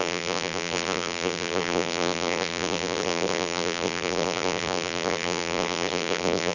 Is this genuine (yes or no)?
no